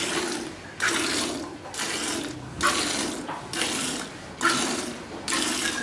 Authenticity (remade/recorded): recorded